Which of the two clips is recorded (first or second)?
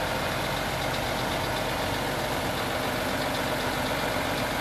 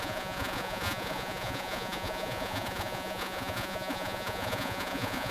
first